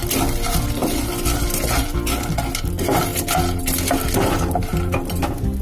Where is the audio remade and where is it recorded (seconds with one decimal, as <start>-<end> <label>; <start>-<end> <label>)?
0.0-5.6 recorded

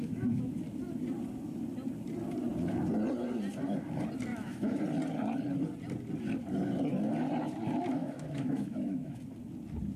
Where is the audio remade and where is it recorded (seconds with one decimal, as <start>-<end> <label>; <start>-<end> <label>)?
0.0-0.5 remade; 0.5-4.3 recorded; 4.3-4.8 remade; 4.8-8.0 recorded; 8.0-9.2 remade; 9.2-10.0 recorded

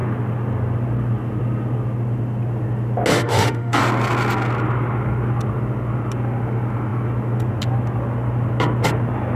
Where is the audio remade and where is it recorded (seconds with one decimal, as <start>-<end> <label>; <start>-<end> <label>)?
0.0-3.1 recorded; 3.1-3.8 remade; 3.8-9.4 recorded

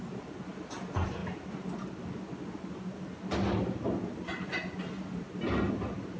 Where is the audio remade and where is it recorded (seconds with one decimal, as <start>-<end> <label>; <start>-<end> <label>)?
0.0-6.2 recorded

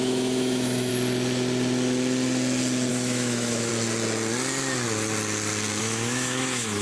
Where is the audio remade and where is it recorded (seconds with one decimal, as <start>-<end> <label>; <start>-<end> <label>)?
0.0-0.9 remade; 0.9-2.9 recorded; 2.9-3.7 remade; 3.7-5.8 recorded; 5.8-6.8 remade

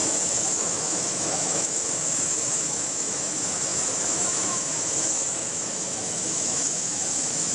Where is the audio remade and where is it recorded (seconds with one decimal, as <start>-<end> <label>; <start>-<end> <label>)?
0.0-7.5 remade

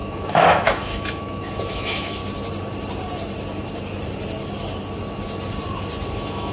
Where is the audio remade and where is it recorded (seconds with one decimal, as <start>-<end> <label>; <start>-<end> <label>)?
0.0-2.2 remade; 2.2-6.1 recorded; 6.1-6.5 remade

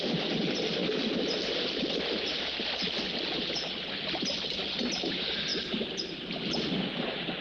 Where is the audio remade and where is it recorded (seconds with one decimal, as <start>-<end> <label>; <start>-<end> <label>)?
0.0-7.4 recorded